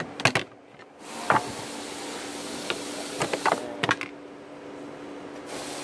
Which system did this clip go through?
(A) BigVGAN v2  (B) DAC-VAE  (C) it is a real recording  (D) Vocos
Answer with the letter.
C